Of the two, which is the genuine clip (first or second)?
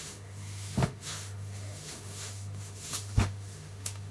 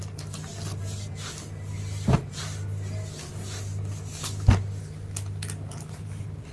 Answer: second